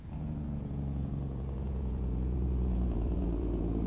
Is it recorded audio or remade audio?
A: remade